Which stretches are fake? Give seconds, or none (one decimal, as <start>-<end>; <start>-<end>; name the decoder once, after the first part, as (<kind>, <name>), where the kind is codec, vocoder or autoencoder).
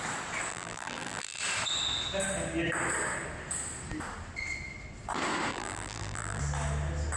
0.5-1.4 (vocoder, BigVGAN v2); 5.5-6.4